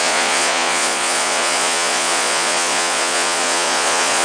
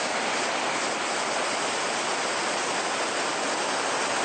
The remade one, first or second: first